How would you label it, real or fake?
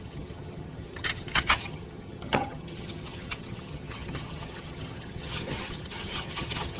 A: fake